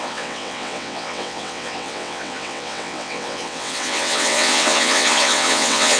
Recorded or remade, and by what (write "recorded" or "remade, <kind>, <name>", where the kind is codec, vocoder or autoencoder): remade, vocoder, WaveNeXt